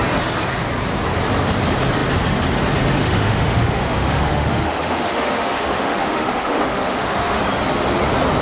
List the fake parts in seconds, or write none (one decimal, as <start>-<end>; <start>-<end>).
3.0-7.4